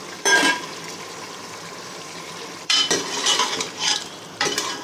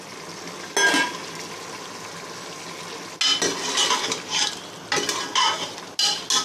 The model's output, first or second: first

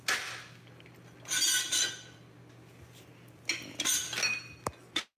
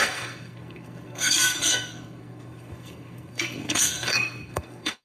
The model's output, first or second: second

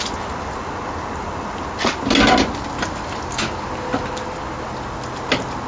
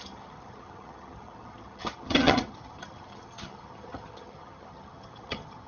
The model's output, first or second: second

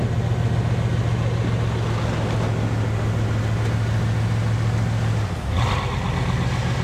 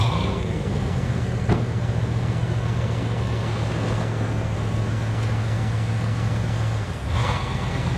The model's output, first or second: second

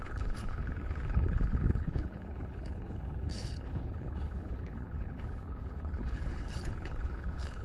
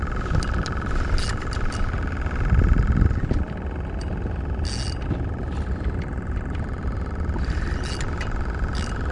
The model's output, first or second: first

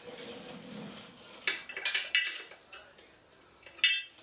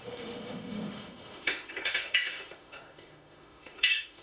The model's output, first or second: second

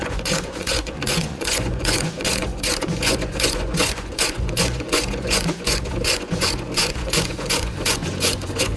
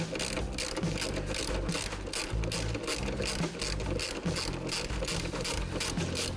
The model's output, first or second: first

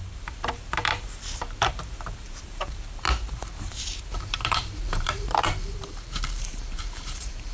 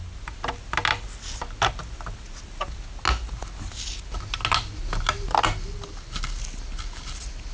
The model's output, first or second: first